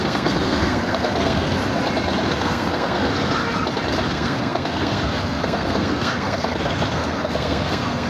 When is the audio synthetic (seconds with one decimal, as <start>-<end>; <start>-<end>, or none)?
0.0-1.6; 2.3-3.4; 4.1-8.1